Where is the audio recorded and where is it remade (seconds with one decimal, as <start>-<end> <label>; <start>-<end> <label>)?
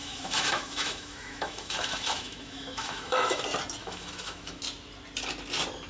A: 0.0-3.4 remade; 3.4-3.8 recorded; 3.8-4.6 remade; 4.6-5.9 recorded